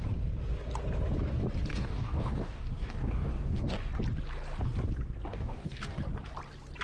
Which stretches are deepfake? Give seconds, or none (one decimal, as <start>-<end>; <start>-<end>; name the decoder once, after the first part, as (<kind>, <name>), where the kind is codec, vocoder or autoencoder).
1.7-3.9 (codec, DAC); 5.3-6.0